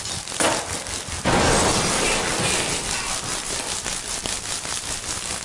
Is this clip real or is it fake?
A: real